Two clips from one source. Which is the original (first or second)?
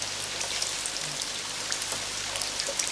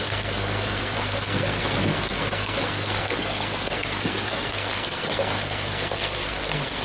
first